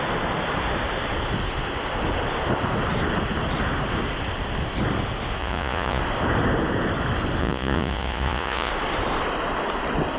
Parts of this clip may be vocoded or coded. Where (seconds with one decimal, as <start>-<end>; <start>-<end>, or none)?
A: 5.4-6.0; 7.4-8.7